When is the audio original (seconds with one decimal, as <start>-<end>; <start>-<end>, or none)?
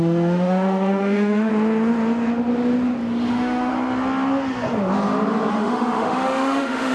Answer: 1.5-3.3; 3.7-5.5